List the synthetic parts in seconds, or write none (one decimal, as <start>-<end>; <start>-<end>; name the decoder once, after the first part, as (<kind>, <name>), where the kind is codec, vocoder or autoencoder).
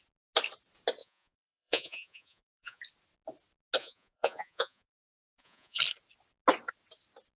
1.0-2.8 (vocoder, Vocos); 3.8-5.8